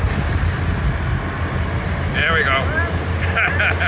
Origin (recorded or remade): recorded